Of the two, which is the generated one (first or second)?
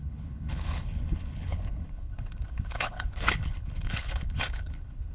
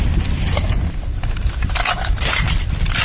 first